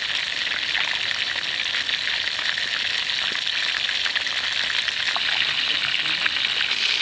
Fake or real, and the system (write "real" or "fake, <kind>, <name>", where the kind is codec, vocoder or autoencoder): real